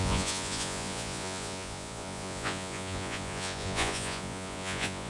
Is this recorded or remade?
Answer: remade